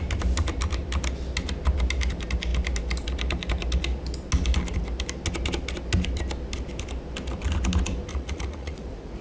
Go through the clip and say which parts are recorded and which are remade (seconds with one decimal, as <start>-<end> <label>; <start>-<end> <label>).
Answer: 0.0-8.1 recorded; 8.1-9.2 remade